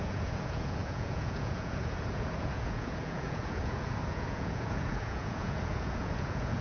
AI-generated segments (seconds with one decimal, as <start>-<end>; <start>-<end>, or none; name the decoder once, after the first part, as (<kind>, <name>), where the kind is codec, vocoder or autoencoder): 0.0-6.6 (vocoder, Vocos)